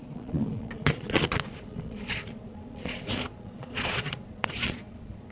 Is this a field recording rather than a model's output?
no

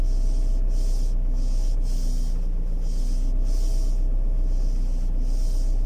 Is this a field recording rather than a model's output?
yes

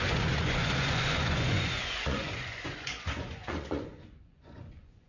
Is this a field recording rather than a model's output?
no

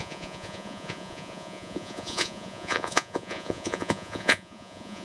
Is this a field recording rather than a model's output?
no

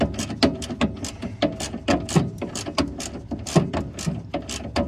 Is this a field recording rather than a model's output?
yes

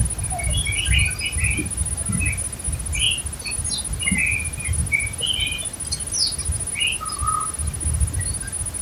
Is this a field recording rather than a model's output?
yes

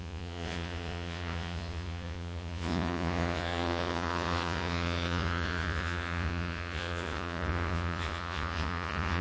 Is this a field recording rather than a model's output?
no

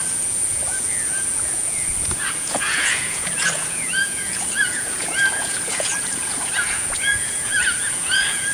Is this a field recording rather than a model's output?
no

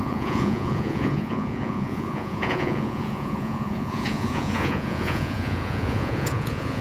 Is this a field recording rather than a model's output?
no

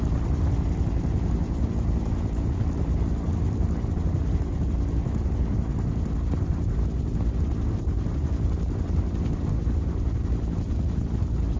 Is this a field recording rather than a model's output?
yes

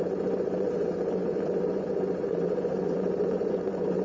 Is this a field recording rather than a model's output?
no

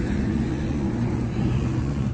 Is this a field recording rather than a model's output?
no